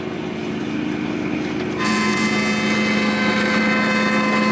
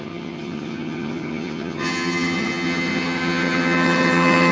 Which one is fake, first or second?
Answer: second